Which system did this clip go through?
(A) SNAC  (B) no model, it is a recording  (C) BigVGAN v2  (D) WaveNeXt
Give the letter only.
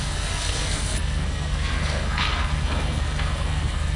A